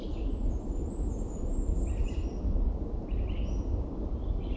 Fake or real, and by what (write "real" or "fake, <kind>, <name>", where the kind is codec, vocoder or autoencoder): real